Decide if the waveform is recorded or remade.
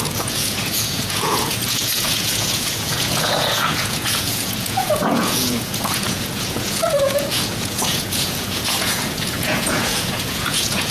remade